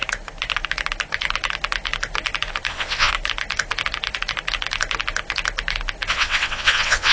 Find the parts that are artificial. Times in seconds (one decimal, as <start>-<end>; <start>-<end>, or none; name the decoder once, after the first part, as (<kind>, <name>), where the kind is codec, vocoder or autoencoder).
2.7-3.1 (vocoder, WaveNeXt); 6.1-7.1